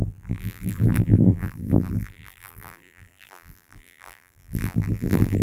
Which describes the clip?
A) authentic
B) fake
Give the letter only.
B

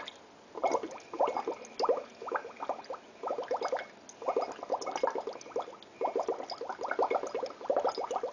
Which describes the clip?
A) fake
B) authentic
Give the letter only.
B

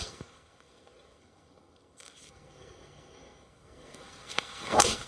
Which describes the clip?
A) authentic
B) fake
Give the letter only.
B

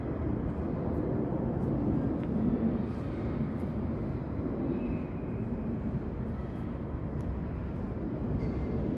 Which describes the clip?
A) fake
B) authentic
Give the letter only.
B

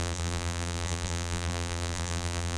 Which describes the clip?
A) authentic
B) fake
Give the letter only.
B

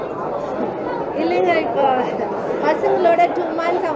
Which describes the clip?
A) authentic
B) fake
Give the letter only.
B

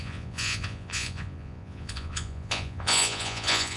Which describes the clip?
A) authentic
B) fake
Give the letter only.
B